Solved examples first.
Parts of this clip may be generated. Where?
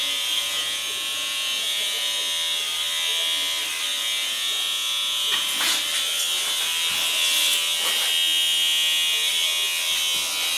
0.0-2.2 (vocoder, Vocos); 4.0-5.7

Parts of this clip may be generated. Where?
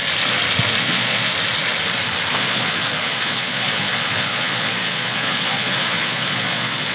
0.8-1.3 (vocoder, Vocos); 2.3-6.9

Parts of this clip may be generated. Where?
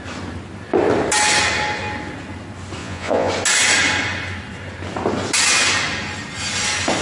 2.8-3.3 (vocoder, Vocos)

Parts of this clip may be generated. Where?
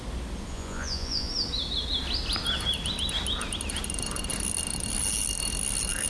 0.5-1.3 (vocoder, Vocos)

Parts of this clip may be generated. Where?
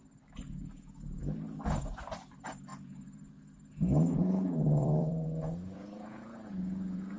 0.6-1.2 (vocoder, Vocos); 2.7-7.2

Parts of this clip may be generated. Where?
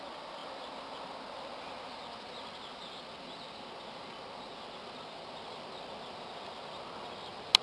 none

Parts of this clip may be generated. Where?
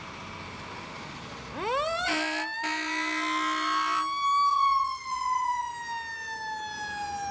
4.5-5.7 (vocoder, Vocos)